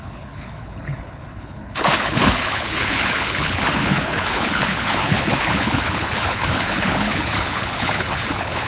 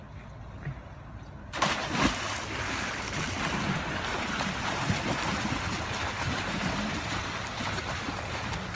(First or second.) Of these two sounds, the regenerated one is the first